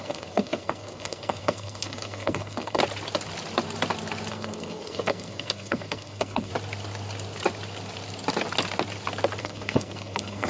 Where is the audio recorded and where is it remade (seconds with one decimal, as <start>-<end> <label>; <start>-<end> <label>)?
0.0-2.8 remade; 2.8-4.3 recorded; 4.3-6.5 remade; 6.5-9.4 recorded; 9.4-10.5 remade